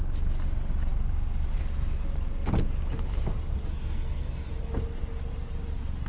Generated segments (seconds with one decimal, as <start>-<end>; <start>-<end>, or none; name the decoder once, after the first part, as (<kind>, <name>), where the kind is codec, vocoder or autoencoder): 3.7-4.5 (codec, SNAC)